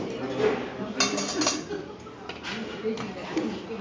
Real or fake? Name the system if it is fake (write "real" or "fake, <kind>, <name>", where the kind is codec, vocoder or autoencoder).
real